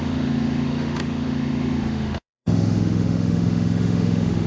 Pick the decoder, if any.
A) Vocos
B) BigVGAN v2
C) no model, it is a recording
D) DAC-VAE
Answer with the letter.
D